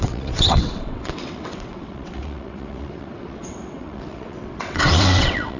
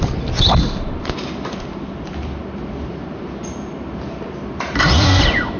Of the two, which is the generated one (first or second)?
first